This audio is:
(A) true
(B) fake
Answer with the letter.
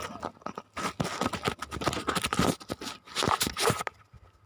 A